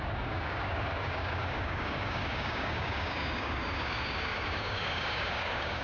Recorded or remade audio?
remade